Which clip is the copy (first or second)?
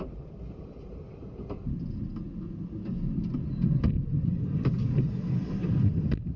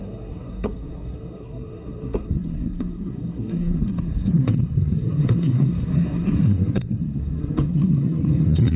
second